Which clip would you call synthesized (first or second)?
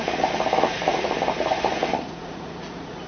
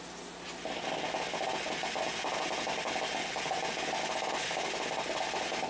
first